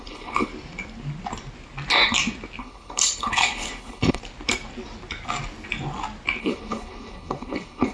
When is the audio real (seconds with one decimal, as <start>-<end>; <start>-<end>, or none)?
0.5-2.6; 4.2-6.4